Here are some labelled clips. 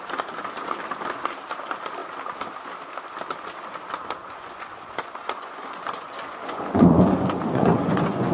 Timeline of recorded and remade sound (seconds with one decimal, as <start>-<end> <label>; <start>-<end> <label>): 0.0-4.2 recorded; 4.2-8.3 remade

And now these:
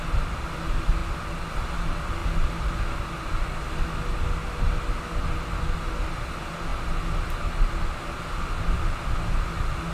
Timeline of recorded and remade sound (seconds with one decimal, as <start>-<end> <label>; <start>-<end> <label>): 0.0-9.9 recorded

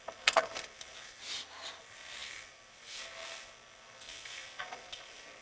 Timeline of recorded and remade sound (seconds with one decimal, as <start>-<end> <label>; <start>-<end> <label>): 0.0-1.2 remade; 1.2-1.8 recorded; 1.8-5.4 remade

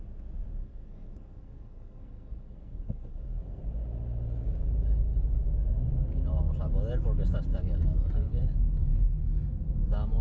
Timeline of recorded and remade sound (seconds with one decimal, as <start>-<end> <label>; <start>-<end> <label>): 0.0-0.6 recorded; 0.6-3.6 remade; 3.6-10.2 recorded

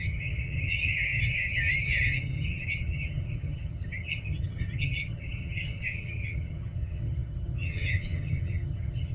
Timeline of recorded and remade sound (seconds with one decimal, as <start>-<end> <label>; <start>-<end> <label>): 0.0-9.1 remade

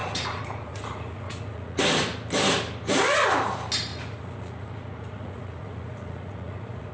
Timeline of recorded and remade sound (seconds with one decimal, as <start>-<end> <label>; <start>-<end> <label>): 0.0-1.8 remade; 1.8-3.9 recorded; 3.9-6.9 remade